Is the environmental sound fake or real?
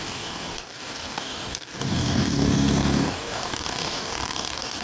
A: fake